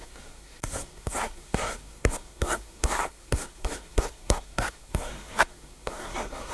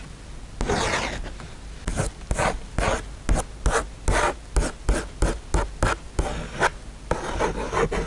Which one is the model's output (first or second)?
first